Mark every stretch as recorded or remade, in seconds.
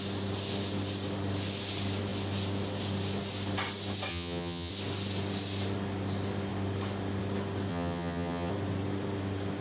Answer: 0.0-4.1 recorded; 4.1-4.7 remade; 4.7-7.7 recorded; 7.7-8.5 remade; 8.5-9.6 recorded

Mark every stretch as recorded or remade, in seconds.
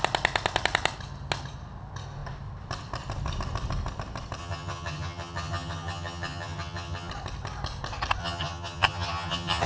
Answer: 0.0-4.4 recorded; 4.4-7.1 remade; 7.1-8.2 recorded; 8.2-9.7 remade